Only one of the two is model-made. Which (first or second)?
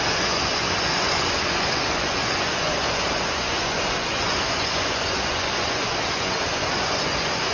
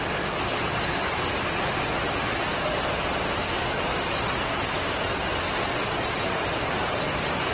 first